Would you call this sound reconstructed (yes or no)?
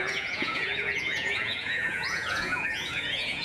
yes